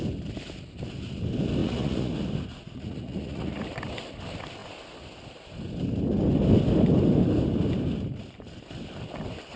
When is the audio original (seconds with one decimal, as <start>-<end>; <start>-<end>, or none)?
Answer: 0.0-1.6; 2.1-2.5; 3.6-9.6